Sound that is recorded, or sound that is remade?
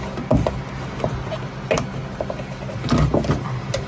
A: recorded